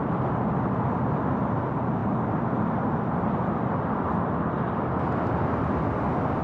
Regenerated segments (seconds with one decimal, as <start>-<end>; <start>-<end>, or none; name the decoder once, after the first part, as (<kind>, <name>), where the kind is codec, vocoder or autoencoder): 0.0-1.2 (vocoder, BigVGAN v2)